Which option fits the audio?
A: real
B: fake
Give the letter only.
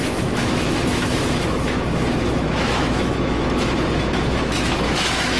B